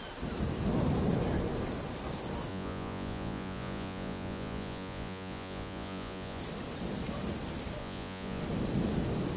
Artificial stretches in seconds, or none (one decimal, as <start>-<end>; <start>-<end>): 2.5-6.4; 7.8-8.4